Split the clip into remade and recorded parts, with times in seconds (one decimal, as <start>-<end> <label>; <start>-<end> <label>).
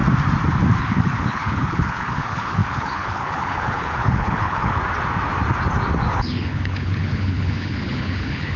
0.0-0.8 recorded; 0.8-4.8 remade; 4.8-6.1 recorded; 6.1-8.6 remade